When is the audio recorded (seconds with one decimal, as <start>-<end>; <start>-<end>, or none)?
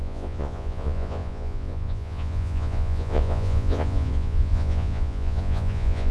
none